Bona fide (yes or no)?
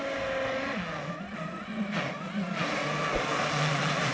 yes